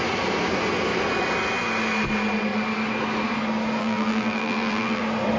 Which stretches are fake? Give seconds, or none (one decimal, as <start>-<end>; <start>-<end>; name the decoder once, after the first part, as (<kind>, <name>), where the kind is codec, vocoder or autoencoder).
3.8-5.0 (vocoder, BigVGAN v2)